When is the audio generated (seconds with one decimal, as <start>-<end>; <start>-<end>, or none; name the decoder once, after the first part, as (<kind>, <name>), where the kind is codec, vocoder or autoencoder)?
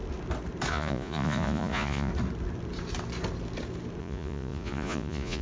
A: 0.7-2.1 (vocoder, Vocos); 4.0-5.4